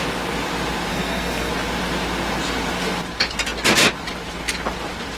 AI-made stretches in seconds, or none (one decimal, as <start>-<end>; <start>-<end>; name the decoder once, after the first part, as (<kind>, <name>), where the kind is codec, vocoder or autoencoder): 0.9-1.5 (codec, SNAC)